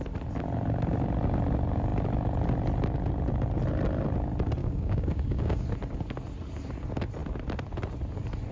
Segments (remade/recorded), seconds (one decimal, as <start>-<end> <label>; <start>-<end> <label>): 0.0-4.6 recorded; 4.6-5.6 remade; 5.6-8.5 recorded